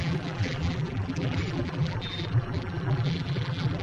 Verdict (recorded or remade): remade